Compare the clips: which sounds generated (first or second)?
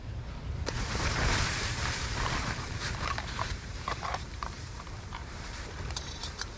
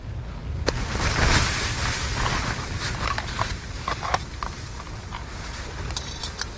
first